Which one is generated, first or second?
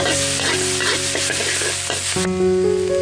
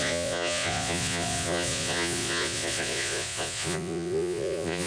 second